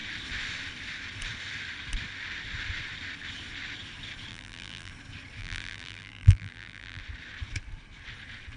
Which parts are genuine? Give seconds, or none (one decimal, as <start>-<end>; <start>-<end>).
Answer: 0.0-4.3; 4.9-5.4; 7.0-8.6